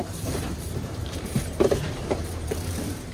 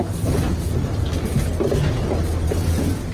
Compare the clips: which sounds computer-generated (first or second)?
first